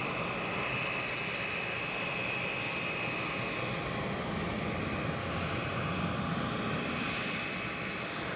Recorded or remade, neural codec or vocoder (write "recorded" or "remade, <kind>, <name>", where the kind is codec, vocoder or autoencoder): recorded